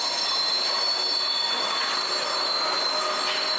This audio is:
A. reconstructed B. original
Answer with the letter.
B